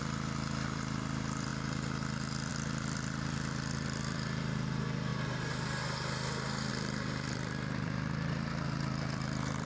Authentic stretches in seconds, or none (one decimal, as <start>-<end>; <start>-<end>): 1.5-2.5; 5.1-6.7

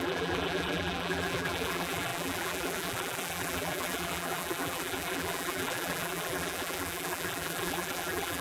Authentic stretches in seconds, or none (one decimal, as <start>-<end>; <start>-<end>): none

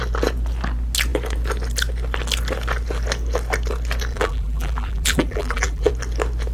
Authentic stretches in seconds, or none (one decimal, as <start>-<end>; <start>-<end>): 0.0-4.1; 5.9-6.5

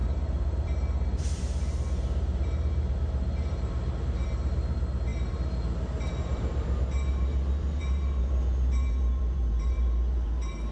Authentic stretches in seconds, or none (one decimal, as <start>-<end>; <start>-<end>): none

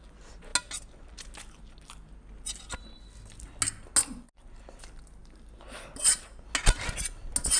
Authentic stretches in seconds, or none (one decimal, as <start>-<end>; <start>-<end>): 0.0-7.6

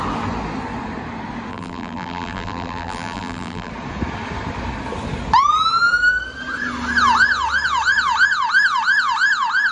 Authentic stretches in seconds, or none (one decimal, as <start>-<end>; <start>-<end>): 0.0-1.5; 3.7-9.7

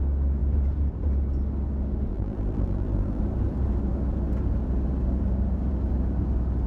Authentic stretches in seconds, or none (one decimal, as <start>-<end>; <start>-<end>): 0.0-2.1; 3.2-6.7

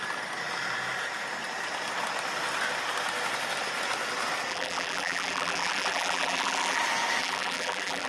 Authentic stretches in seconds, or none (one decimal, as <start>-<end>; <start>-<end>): 0.0-4.5; 6.8-7.2